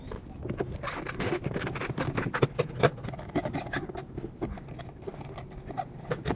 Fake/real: real